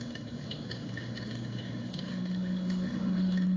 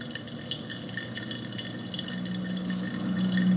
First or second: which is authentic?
second